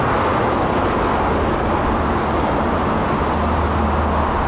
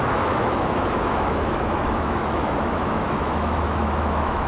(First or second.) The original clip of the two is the first